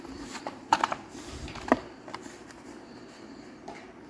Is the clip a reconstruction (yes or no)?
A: yes